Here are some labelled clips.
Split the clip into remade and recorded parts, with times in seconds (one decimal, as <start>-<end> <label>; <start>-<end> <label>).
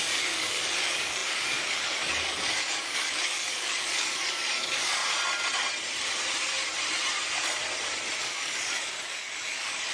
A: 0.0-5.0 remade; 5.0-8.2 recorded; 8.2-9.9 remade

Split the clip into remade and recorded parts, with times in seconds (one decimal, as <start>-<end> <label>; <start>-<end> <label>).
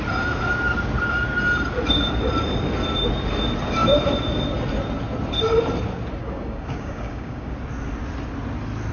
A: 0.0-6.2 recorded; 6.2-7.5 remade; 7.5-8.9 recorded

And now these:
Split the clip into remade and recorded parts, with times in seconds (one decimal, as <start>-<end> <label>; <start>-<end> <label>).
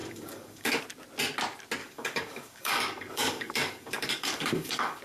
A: 0.0-0.8 remade; 0.8-1.8 recorded; 1.8-5.0 remade